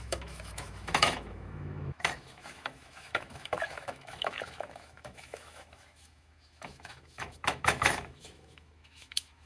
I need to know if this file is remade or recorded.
remade